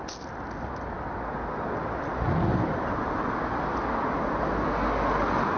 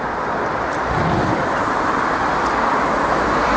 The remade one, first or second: second